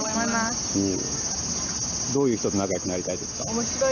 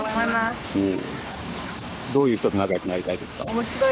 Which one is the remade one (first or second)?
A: second